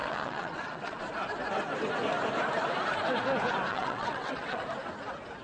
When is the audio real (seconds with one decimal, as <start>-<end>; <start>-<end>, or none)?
1.0-3.7; 4.6-5.4